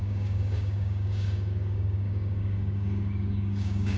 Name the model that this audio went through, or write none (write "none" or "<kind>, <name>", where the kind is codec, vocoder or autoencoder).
codec, DAC